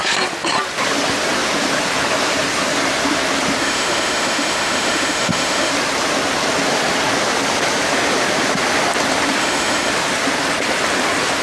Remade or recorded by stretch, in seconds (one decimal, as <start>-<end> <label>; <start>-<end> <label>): 0.0-3.6 recorded; 3.6-5.7 remade; 5.7-9.4 recorded; 9.4-9.9 remade; 9.9-11.4 recorded